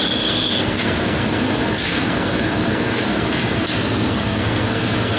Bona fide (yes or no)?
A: no